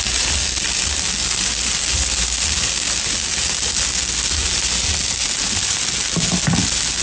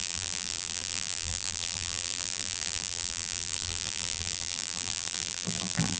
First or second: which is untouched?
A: first